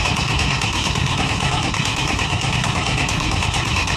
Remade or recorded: remade